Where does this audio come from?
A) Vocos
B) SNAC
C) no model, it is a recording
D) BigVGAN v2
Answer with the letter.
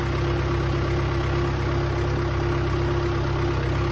C